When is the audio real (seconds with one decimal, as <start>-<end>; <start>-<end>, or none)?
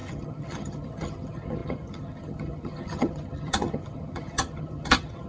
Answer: none